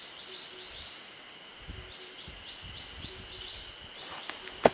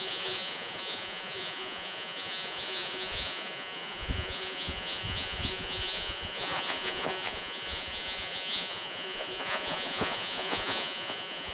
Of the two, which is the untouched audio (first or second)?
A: first